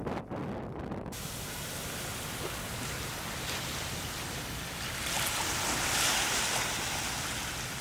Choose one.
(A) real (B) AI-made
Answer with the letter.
A